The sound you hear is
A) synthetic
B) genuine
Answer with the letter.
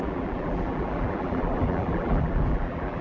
A